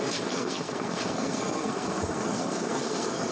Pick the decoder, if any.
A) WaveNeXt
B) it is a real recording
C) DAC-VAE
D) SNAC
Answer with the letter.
D